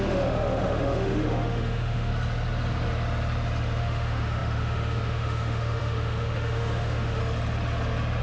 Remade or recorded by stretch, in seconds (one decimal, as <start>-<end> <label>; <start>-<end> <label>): 0.0-2.1 remade; 2.1-3.8 recorded; 3.8-7.2 remade; 7.2-8.2 recorded